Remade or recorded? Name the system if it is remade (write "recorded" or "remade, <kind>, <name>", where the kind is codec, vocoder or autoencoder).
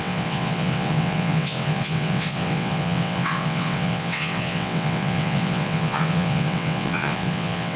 remade, vocoder, WaveNeXt